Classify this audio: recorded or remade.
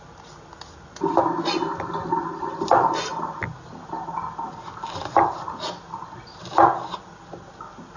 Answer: recorded